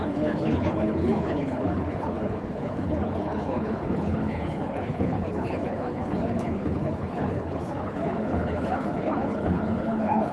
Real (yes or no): no